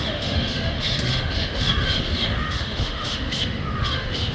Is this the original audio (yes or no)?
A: no